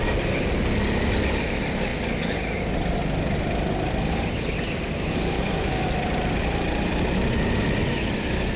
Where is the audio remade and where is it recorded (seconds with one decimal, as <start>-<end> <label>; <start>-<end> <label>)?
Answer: 0.0-8.6 recorded